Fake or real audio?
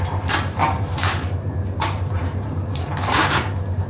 fake